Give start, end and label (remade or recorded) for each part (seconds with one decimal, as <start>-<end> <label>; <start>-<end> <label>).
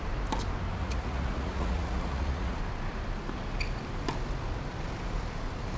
0.0-0.8 recorded; 0.8-2.6 remade; 2.6-5.8 recorded